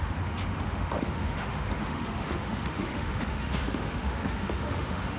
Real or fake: fake